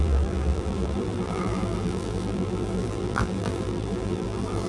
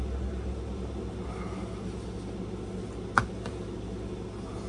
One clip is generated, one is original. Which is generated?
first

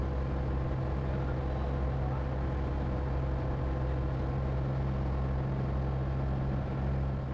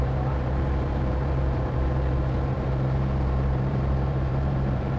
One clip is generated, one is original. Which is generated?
second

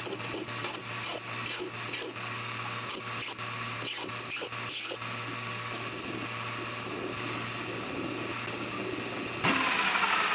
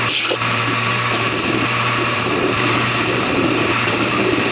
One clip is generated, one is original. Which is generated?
second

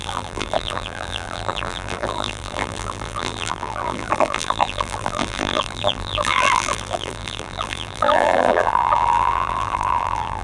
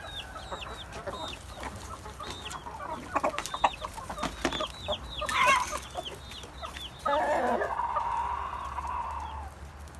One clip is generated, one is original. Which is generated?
first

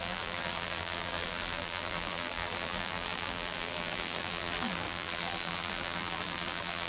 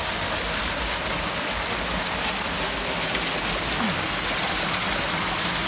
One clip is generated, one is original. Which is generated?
first